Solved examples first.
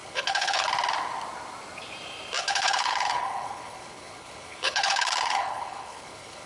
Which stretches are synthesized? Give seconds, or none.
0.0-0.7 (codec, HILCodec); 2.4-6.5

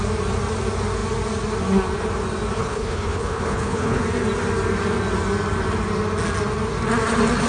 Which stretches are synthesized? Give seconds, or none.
2.6-4.0 (codec, HILCodec)

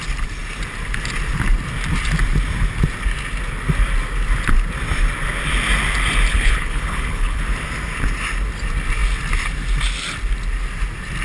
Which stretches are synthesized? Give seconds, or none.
6.3-7.4 (codec, HILCodec)